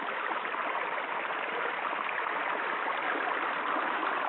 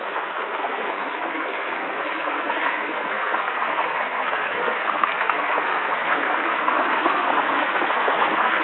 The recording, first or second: first